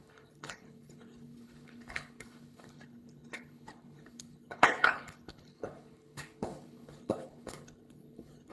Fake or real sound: fake